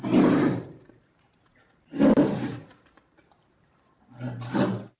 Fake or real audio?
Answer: fake